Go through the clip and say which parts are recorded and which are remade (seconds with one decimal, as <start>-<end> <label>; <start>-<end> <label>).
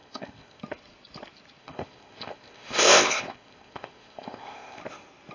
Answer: 0.0-0.6 remade; 0.6-1.6 recorded; 1.6-4.8 remade; 4.8-5.3 recorded